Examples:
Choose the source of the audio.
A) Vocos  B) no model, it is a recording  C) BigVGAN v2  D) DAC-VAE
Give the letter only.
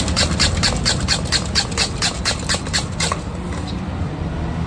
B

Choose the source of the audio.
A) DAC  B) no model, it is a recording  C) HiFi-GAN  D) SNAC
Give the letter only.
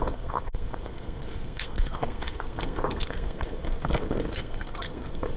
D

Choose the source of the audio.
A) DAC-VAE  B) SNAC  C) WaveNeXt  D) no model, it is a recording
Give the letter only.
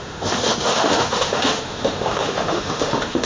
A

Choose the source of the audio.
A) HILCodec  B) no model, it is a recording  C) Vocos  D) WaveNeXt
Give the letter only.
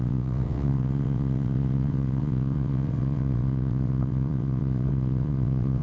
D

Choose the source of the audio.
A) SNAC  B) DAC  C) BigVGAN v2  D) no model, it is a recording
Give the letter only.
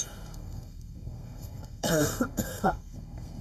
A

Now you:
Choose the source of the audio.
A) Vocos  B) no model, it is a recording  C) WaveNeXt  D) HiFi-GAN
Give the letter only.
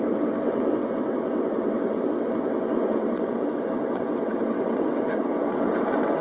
C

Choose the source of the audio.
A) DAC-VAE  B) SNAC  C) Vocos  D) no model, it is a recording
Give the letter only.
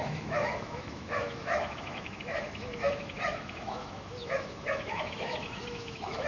A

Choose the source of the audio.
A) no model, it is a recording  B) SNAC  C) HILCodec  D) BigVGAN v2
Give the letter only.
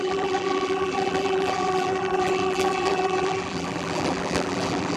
D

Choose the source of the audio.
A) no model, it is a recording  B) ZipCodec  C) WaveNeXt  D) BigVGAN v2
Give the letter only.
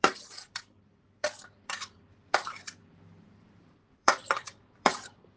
D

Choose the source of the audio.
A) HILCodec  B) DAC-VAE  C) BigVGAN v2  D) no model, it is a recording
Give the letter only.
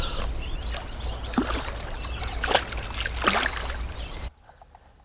D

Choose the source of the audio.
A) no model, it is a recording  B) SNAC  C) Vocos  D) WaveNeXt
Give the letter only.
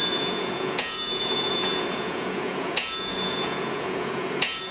C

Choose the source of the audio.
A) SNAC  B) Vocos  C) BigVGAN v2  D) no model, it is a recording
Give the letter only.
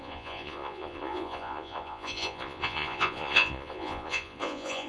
B